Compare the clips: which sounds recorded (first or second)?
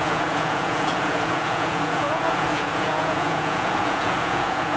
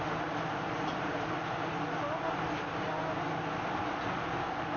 second